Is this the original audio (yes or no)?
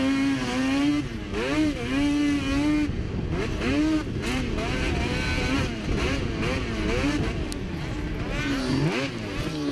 yes